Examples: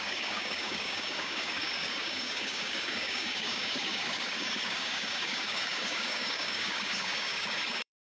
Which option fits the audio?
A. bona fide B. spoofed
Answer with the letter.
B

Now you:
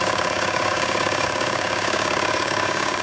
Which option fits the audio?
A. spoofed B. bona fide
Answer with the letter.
A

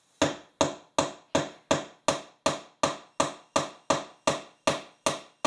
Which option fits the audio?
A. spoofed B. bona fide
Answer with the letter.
B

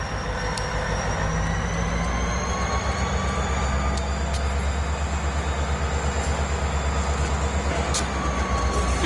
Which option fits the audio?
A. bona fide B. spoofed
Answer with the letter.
A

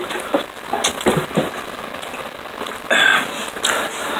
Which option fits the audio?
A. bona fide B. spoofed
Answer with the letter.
A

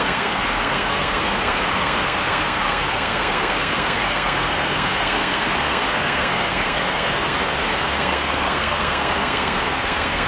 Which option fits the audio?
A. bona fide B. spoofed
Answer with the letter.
B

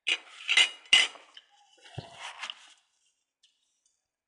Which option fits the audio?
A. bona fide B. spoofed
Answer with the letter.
A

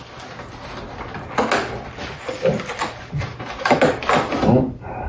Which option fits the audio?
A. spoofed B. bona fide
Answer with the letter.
B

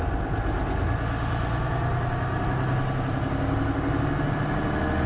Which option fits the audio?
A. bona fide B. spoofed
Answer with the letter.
A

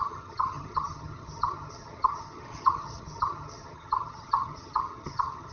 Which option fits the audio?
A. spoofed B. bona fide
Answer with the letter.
A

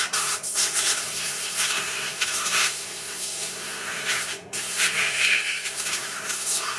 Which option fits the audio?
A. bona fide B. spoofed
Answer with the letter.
B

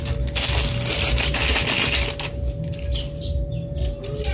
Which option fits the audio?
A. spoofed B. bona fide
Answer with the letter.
B